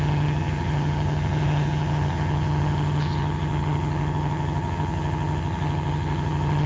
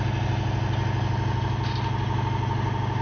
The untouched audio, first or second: second